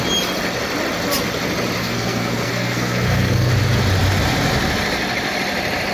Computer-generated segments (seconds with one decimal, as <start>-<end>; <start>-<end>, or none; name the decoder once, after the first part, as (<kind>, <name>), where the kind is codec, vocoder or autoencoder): 1.8-3.5 (codec, SNAC)